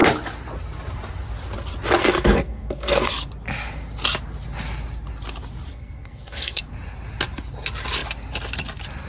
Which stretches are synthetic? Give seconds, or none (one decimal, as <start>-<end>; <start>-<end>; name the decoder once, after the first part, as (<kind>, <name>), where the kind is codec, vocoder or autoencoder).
2.0-3.1 (codec, SNAC); 5.7-6.6